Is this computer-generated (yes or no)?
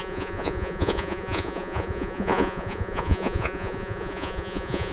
yes